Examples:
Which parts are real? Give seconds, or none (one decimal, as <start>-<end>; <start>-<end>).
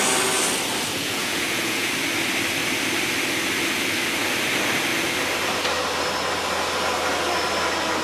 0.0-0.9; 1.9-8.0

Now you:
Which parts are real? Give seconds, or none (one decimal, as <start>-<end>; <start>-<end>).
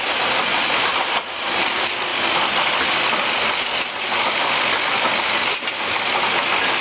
0.0-6.8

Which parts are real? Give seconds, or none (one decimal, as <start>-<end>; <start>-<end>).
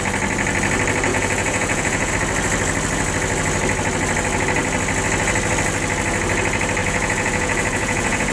0.0-1.1; 2.1-6.8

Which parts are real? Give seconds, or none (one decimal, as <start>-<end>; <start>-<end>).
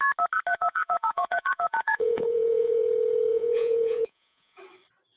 0.0-0.5; 2.8-3.3; 4.6-5.2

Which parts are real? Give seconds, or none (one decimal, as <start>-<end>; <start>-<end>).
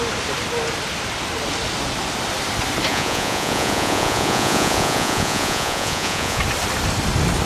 0.0-2.9; 6.4-7.5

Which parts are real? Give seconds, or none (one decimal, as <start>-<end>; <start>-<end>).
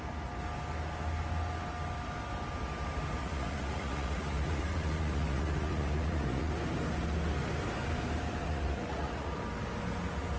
0.0-3.2; 6.5-8.4; 9.4-10.4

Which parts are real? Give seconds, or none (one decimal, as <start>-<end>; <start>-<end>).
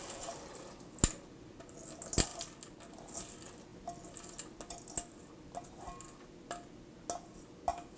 0.0-8.0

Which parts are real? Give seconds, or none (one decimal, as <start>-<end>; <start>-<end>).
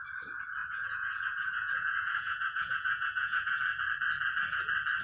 0.0-0.6; 3.6-5.0